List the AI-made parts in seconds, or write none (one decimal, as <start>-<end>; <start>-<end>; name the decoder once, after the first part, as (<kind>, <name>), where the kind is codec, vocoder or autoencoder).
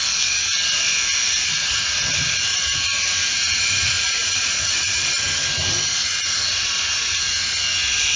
1.2-2.0 (vocoder, BigVGAN v2); 2.5-7.2